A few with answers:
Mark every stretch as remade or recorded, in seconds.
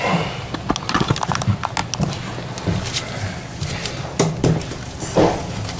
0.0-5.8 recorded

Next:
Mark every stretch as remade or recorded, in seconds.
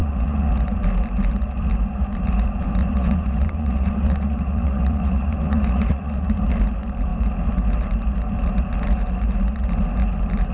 0.0-0.5 remade; 0.5-2.8 recorded; 2.8-6.4 remade; 6.4-10.5 recorded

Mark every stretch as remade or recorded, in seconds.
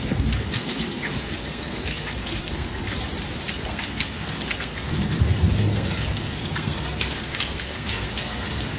0.0-2.8 remade; 2.8-3.5 recorded; 3.5-8.8 remade